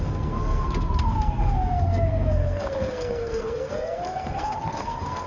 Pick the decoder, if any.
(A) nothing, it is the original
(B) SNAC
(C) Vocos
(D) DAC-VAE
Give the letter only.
B